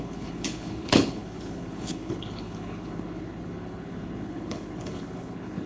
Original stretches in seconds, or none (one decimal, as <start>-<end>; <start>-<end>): none